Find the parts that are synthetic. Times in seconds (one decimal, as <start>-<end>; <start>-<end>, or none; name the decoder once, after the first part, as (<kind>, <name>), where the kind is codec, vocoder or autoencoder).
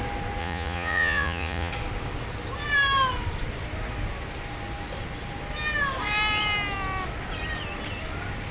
0.4-1.7 (vocoder, Vocos)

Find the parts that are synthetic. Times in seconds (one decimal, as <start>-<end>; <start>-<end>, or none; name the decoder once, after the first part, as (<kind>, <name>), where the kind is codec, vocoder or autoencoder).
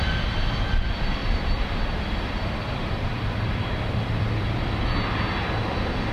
1.2-4.9 (vocoder, BigVGAN v2)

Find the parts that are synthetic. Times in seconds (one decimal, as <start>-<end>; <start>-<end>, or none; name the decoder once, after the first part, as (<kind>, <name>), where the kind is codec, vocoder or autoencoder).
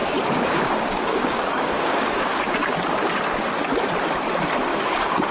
0.0-3.2 (codec, DAC); 4.7-5.3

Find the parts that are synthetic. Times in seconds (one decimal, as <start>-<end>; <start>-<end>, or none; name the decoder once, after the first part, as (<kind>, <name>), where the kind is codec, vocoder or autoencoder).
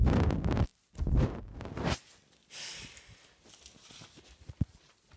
none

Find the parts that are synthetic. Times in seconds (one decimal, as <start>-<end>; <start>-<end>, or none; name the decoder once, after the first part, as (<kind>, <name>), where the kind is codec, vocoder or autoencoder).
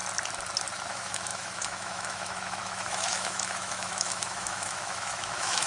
0.9-5.7 (autoencoder, DAC-VAE)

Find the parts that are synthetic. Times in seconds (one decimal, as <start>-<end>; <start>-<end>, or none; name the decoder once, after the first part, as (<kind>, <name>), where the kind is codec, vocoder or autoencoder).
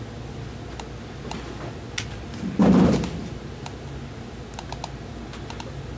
none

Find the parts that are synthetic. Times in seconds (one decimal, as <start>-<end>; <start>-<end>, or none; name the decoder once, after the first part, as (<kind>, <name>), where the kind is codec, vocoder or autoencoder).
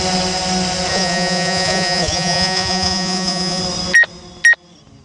0.9-3.6 (vocoder, Vocos)